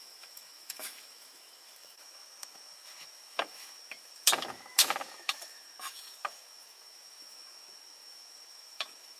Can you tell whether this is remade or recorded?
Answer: remade